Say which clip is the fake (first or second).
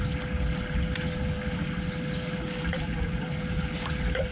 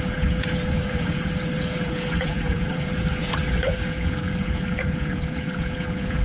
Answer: second